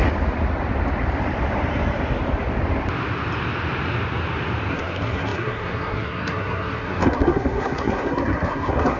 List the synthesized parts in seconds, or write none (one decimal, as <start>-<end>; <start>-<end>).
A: 4.7-9.0